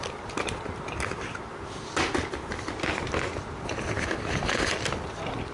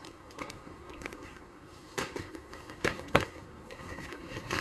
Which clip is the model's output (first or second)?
second